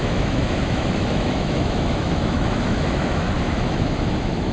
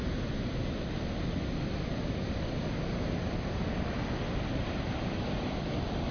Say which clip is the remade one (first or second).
first